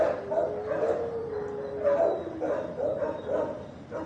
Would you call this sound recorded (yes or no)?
yes